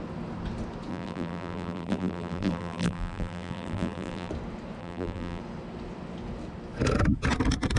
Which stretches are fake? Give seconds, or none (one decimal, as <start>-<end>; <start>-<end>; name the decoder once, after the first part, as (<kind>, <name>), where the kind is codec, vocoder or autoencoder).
0.9-4.3 (vocoder, BigVGAN v2); 4.8-5.4